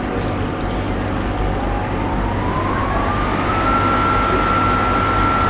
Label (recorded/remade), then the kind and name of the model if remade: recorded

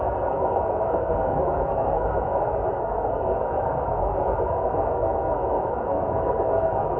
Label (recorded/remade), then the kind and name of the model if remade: remade, codec, SNAC